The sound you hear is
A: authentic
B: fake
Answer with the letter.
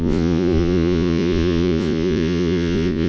B